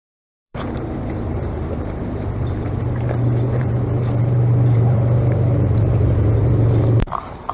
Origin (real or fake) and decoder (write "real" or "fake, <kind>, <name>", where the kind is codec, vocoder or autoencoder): fake, vocoder, BigVGAN v2